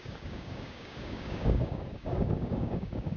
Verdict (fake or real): fake